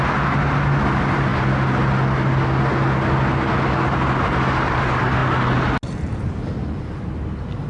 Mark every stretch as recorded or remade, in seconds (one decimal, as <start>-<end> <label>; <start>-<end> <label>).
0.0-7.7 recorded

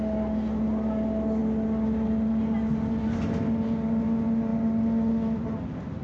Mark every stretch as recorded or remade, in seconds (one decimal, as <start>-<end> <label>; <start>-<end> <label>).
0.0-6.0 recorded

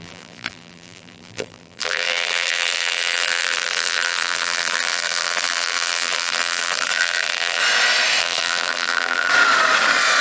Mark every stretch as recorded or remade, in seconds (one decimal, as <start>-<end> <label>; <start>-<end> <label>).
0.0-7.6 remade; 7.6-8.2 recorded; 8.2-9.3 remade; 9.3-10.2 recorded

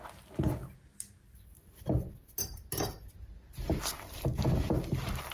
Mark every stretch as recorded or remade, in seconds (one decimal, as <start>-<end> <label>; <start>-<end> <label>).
0.0-5.3 recorded